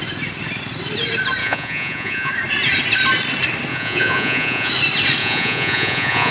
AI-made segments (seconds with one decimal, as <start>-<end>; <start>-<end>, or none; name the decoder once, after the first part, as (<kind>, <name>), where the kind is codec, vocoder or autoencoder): 1.4-2.3 (vocoder, Vocos); 3.7-4.7; 5.2-6.3